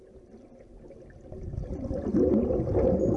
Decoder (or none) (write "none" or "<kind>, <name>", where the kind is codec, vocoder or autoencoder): none